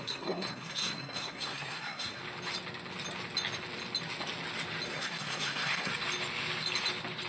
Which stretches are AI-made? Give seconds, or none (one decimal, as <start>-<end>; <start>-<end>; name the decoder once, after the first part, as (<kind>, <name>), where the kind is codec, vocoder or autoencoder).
0.0-2.2 (codec, SNAC); 4.9-5.9